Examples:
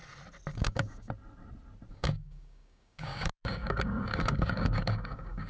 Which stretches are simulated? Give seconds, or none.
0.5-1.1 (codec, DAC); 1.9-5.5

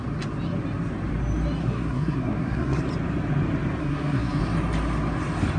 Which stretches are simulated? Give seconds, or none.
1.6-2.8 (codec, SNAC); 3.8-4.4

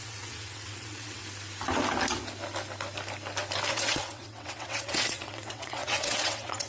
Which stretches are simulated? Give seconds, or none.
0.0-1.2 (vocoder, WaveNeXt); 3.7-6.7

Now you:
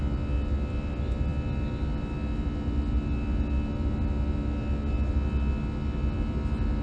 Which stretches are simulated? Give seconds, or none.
none

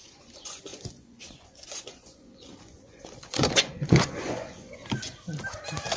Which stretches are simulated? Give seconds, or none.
0.0-4.8 (vocoder, Vocos)

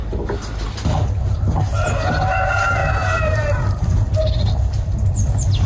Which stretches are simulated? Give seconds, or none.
2.8-4.9 (vocoder, BigVGAN v2)

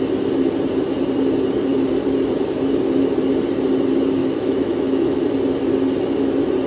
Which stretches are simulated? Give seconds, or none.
4.2-5.2 (autoencoder, DAC-VAE)

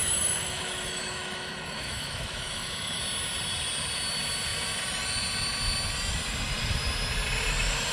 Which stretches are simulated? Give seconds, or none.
0.0-3.0 (autoencoder, DAC-VAE)